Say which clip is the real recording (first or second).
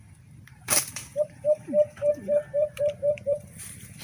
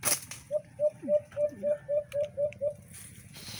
second